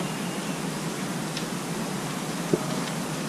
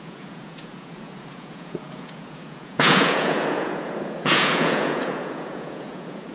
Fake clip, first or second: second